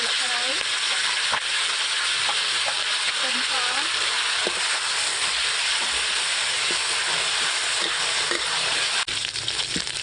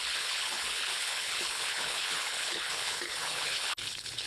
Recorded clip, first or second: first